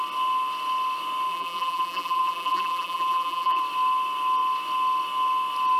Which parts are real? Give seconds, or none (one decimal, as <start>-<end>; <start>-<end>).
0.0-1.3; 3.6-5.8